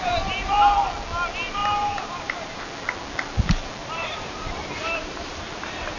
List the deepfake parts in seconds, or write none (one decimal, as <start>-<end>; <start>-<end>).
1.6-2.6; 3.8-6.0